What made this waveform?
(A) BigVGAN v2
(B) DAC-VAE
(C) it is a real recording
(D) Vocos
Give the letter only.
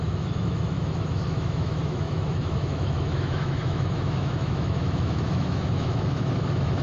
B